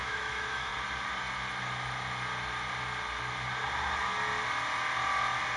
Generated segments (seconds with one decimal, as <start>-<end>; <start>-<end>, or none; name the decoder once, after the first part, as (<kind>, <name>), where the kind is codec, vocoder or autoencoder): 0.0-0.7 (autoencoder, DAC-VAE)